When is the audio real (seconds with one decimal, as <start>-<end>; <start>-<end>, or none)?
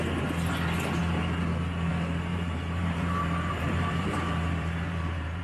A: 0.0-2.3